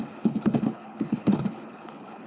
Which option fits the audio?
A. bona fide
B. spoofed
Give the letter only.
B